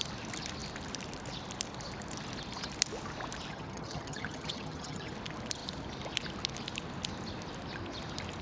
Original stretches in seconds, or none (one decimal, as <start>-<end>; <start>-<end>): 0.0-3.5; 5.1-8.4